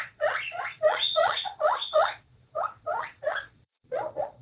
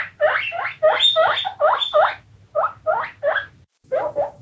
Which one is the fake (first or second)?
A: first